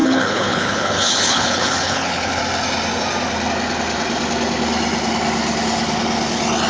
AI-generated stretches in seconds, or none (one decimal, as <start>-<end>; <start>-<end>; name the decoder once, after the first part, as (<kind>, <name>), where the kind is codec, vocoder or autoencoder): 0.0-2.4 (codec, HILCodec)